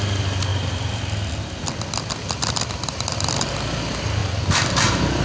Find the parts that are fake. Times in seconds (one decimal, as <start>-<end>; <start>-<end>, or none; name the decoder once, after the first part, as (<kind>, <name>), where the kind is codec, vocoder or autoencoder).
none